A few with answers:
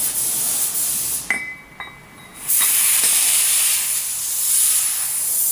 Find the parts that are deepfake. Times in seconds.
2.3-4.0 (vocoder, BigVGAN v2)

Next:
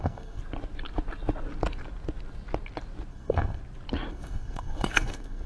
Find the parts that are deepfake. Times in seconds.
0.0-0.4 (codec, SNAC); 3.1-3.6; 4.1-5.5

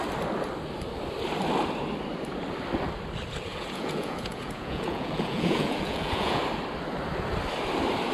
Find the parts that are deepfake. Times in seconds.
3.5-6.4 (vocoder, Vocos)

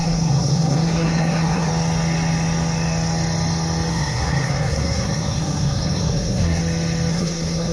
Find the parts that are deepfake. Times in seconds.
0.0-1.7 (codec, SNAC); 3.9-6.6; 7.1-7.7

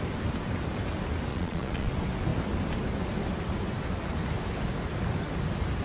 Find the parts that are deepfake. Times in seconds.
1.3-1.9 (vocoder, Vocos)

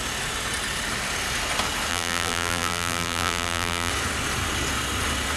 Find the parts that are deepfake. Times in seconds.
1.9-3.9 (vocoder, BigVGAN v2)

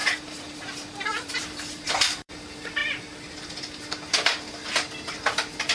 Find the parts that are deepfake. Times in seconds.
0.0-2.3 (vocoder, BigVGAN v2)

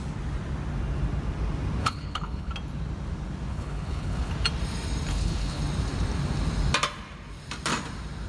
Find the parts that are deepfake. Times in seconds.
1.8-2.5 (codec, HILCodec); 3.5-4.3; 5.1-5.6